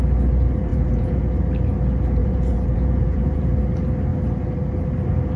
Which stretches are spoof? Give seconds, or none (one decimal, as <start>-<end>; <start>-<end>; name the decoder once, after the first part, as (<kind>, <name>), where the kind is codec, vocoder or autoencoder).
0.7-1.2 (vocoder, Vocos); 2.2-3.6